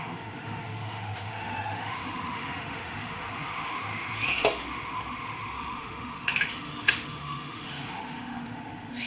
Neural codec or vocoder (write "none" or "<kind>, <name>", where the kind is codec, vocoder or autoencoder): autoencoder, DAC-VAE